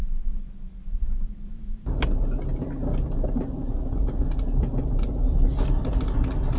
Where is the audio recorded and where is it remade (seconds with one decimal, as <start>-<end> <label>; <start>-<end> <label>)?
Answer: 0.0-6.6 recorded